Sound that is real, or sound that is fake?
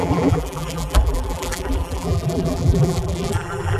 fake